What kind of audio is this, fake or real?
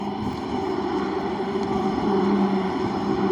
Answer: fake